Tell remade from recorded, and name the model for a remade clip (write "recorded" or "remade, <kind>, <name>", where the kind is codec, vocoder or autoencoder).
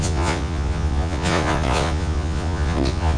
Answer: remade, vocoder, Vocos